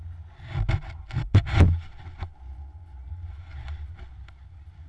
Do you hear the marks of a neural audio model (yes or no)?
no